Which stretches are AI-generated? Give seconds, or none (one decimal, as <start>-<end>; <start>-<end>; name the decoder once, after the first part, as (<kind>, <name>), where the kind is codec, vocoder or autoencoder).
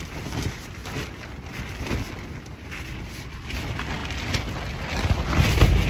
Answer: none